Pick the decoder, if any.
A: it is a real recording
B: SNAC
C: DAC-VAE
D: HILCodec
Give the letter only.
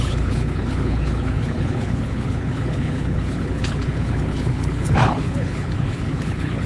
D